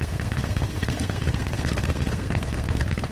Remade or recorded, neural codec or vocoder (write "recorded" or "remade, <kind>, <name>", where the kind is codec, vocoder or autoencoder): remade, codec, SNAC